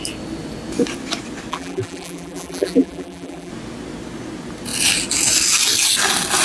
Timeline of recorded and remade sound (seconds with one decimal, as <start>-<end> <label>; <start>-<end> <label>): 0.0-1.5 recorded; 1.5-3.5 remade; 3.5-6.4 recorded